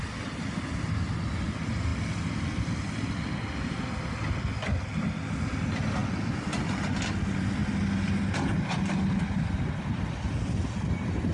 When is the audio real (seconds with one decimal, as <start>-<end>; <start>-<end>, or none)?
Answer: 0.0-11.3